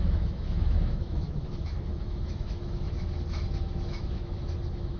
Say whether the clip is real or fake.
fake